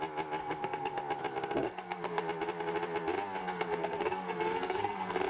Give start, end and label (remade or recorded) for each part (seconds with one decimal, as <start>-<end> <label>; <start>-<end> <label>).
0.0-0.4 recorded; 0.4-1.0 remade; 1.0-1.6 recorded; 1.6-2.2 remade; 2.2-3.4 recorded; 3.4-5.3 remade